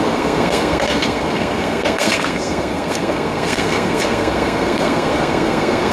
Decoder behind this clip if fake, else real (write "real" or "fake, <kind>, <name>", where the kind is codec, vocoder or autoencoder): fake, codec, SNAC